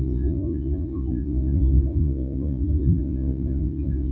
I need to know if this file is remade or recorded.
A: remade